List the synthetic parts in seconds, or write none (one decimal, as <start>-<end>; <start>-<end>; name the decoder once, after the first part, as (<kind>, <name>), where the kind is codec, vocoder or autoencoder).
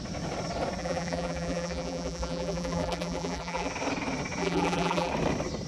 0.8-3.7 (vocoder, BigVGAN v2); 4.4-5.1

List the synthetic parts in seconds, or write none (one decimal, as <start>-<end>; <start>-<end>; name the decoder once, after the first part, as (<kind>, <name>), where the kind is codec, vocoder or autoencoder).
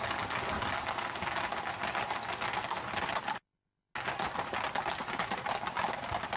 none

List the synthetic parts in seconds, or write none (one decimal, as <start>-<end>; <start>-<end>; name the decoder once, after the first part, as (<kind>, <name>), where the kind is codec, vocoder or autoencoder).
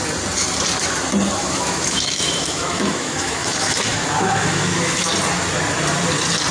1.4-5.1 (autoencoder, DAC-VAE)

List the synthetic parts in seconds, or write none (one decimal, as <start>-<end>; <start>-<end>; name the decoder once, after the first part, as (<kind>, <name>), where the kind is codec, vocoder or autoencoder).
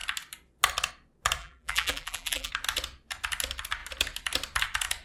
1.4-2.5 (vocoder, BigVGAN v2)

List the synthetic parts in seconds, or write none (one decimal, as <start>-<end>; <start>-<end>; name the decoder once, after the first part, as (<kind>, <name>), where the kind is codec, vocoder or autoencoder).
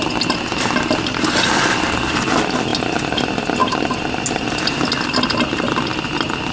none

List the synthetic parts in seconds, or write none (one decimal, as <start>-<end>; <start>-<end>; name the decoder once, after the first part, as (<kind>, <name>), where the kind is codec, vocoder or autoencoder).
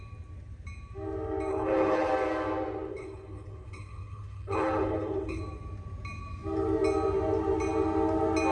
1.5-2.1 (codec, HILCodec); 2.9-5.4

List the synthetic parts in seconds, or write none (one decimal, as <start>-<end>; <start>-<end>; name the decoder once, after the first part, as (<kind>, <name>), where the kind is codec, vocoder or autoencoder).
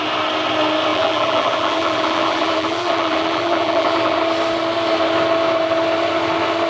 0.9-4.2 (vocoder, BigVGAN v2)